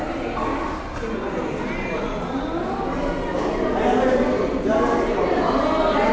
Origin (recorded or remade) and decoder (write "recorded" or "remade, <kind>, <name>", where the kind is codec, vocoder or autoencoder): recorded